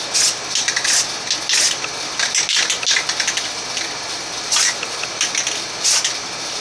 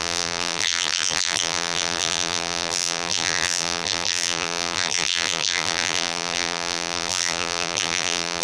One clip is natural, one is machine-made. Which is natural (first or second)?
first